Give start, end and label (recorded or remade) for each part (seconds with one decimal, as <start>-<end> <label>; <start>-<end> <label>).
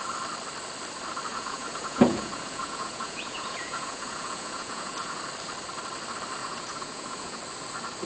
0.0-1.3 recorded; 1.3-5.2 remade; 5.2-6.4 recorded; 6.4-7.4 remade; 7.4-8.1 recorded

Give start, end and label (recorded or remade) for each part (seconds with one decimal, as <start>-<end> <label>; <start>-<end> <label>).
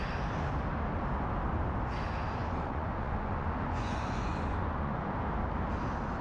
0.0-2.4 recorded; 2.4-5.1 remade; 5.1-6.2 recorded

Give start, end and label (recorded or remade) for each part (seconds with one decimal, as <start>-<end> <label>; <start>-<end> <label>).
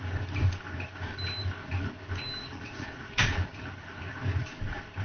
0.0-2.4 recorded; 2.4-3.5 remade; 3.5-5.0 recorded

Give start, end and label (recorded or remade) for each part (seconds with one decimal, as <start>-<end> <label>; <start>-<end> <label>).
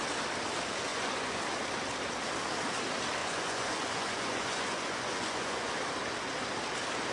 0.0-0.9 recorded; 0.9-1.4 remade; 1.4-3.2 recorded; 3.2-5.7 remade; 5.7-7.1 recorded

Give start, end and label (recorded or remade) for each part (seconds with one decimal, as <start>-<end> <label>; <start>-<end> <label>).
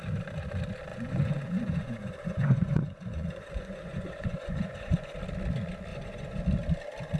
0.0-0.9 recorded; 0.9-5.2 remade; 5.2-5.9 recorded; 5.9-6.4 remade; 6.4-7.2 recorded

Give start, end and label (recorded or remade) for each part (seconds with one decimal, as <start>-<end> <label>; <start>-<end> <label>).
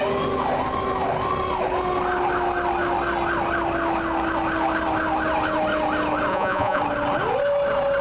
0.0-6.3 recorded; 6.3-6.8 remade; 6.8-8.0 recorded